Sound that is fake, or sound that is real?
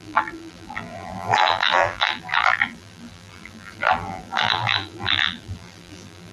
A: fake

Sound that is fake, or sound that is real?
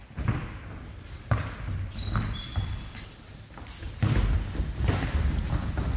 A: real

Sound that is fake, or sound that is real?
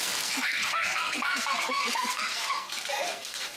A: fake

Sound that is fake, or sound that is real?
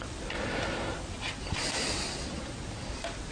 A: fake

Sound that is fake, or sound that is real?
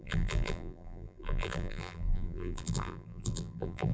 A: fake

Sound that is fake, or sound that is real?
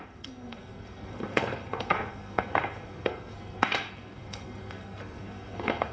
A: fake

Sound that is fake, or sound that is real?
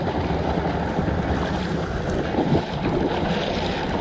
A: real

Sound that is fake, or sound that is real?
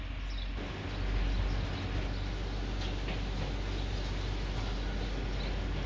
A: real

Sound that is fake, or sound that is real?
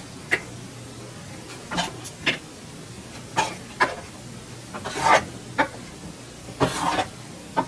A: real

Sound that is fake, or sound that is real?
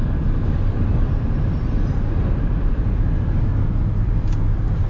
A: fake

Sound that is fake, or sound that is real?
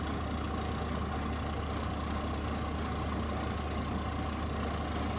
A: real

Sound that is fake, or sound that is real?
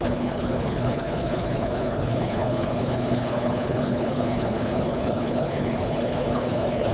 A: fake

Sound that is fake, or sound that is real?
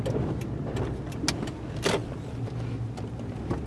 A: real